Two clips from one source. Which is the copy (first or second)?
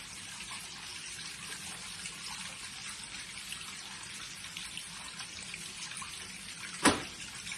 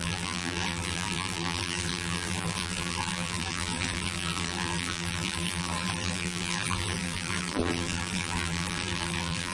second